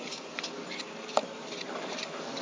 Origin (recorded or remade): recorded